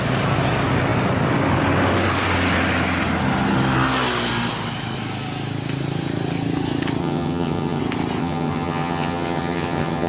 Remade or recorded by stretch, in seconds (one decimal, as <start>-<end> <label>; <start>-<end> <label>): 0.0-7.0 recorded; 7.0-7.8 remade; 7.8-8.2 recorded; 8.2-10.1 remade